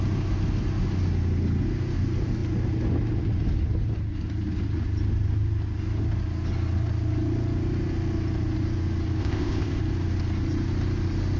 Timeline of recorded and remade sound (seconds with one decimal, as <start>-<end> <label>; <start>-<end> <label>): 0.0-9.2 recorded; 9.2-9.8 remade; 9.8-11.4 recorded